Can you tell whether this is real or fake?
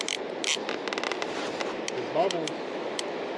real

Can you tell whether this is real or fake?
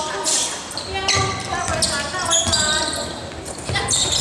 real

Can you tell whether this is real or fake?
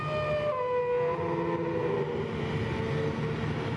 real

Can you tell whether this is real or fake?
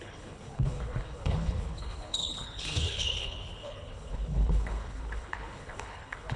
fake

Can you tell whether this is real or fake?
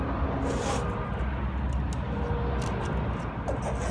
real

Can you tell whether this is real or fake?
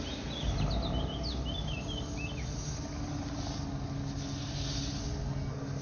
real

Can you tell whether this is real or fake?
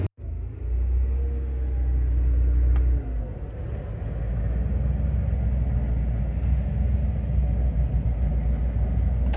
real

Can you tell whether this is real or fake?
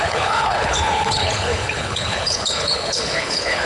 fake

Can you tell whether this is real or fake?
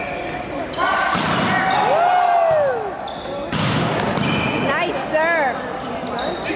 real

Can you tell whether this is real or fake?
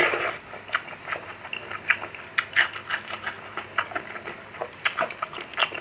real